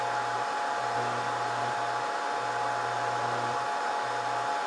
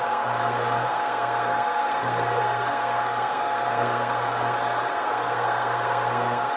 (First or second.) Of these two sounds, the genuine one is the first